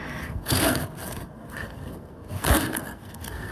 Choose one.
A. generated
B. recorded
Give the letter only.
A